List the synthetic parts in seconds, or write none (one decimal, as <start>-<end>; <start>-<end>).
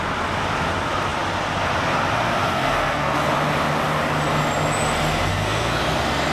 2.4-3.3; 5.3-5.8